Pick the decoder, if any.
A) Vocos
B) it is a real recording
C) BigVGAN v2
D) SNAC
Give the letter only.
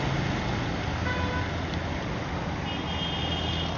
B